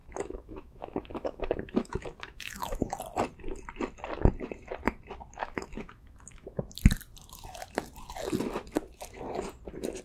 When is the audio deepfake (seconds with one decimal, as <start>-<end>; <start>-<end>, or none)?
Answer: 0.0-2.9; 5.4-6.6